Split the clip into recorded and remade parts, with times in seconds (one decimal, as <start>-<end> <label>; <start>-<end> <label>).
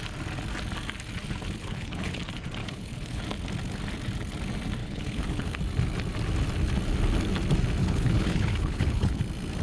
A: 0.0-1.6 recorded; 1.6-2.2 remade; 2.2-2.6 recorded; 2.6-3.2 remade; 3.2-4.8 recorded; 4.8-5.6 remade; 5.6-7.8 recorded; 7.8-9.2 remade; 9.2-9.6 recorded